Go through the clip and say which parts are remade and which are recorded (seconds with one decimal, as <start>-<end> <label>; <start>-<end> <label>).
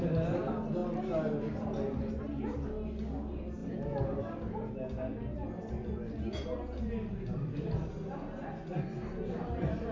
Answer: 0.0-9.9 recorded